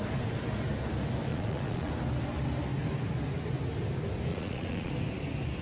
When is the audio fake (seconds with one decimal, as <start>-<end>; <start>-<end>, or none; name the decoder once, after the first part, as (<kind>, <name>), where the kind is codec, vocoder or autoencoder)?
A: 1.3-1.9 (vocoder, Vocos); 4.3-4.9